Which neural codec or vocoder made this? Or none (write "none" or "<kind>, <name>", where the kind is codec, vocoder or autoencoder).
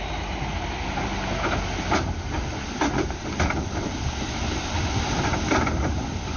none